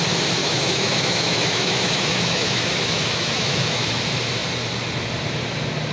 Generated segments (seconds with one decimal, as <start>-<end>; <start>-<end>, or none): 0.4-3.9